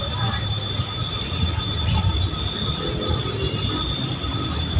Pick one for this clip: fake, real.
fake